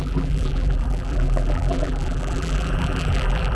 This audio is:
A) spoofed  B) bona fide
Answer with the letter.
A